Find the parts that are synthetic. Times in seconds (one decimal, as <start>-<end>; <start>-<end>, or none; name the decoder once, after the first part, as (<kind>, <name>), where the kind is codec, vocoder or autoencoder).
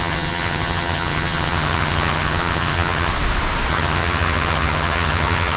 0.0-3.1 (vocoder, HiFi-GAN); 3.7-5.6